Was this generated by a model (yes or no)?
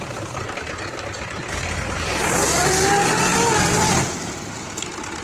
no